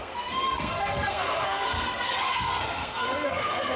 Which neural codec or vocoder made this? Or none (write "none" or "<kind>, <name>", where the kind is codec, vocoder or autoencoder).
codec, SNAC